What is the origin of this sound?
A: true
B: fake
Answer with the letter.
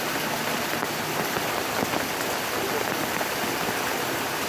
A